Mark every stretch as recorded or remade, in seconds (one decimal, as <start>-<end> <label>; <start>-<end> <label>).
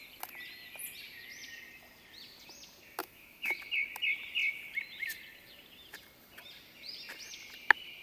0.0-3.0 recorded; 3.0-3.6 remade; 3.6-8.0 recorded